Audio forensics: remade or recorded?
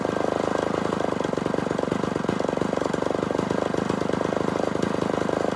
recorded